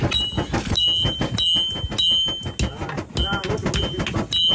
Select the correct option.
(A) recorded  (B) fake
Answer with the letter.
A